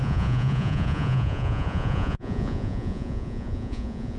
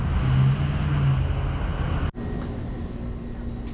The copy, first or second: first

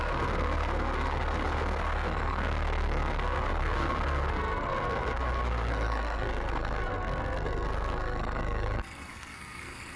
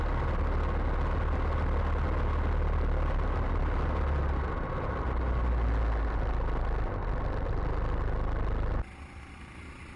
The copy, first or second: first